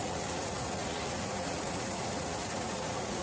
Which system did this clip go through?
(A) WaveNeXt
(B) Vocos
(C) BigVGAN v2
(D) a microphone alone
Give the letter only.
B